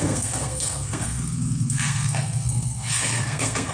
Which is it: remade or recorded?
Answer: remade